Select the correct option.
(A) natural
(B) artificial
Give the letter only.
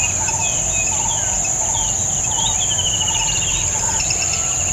A